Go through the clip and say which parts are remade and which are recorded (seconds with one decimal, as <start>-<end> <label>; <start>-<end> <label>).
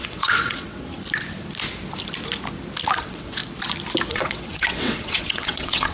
0.0-0.9 remade; 0.9-3.0 recorded; 3.0-3.4 remade; 3.4-4.1 recorded; 4.1-5.9 remade